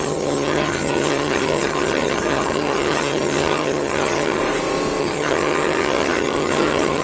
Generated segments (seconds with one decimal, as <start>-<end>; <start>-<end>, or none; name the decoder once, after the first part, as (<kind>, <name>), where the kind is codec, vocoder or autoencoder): 0.0-4.4 (vocoder, HiFi-GAN); 5.0-7.0